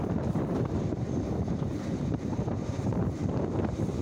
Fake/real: fake